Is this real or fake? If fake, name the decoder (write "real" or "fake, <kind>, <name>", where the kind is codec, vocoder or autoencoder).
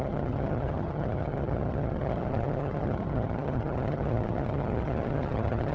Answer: fake, vocoder, HiFi-GAN